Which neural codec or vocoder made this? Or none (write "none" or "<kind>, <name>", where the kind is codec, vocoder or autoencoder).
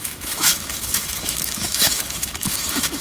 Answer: autoencoder, DAC-VAE